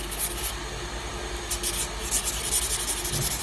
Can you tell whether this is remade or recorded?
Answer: recorded